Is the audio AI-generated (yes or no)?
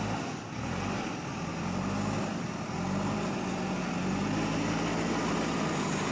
no